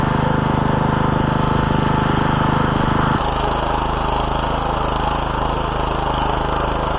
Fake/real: real